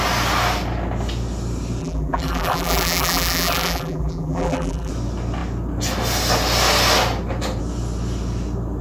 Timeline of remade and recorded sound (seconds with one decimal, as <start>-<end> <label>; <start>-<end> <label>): 0.0-1.8 recorded; 1.8-4.9 remade; 4.9-8.8 recorded